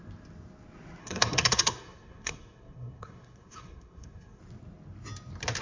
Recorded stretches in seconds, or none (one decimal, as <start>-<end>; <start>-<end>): 0.0-1.0; 4.4-5.6